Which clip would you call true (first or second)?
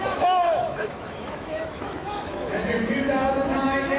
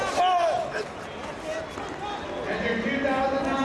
second